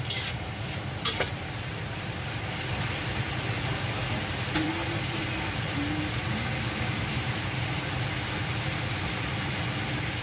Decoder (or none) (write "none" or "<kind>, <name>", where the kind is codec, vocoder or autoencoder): vocoder, BigVGAN v2